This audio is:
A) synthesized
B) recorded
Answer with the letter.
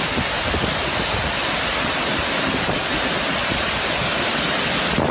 B